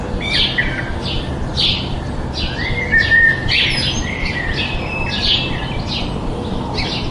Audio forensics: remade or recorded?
recorded